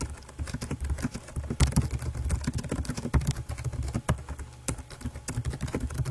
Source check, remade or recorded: recorded